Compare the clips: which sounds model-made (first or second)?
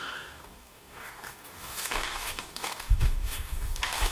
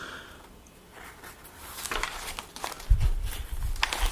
first